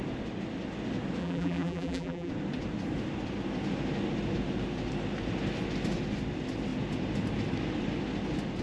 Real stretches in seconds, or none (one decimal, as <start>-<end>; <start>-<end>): 0.0-1.2; 2.3-8.6